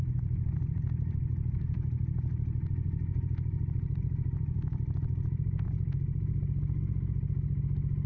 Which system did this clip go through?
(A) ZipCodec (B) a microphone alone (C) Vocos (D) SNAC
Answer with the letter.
B